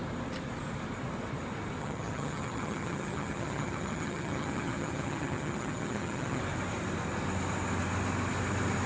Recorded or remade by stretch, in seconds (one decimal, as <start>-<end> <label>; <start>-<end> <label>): 0.0-1.8 recorded; 1.8-6.4 remade; 6.4-8.9 recorded